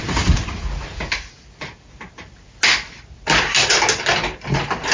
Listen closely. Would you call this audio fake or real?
real